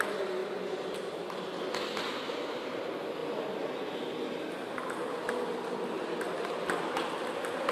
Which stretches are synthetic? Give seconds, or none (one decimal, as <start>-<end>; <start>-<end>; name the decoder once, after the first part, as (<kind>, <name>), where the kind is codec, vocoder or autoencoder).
0.4-1.6 (vocoder, BigVGAN v2)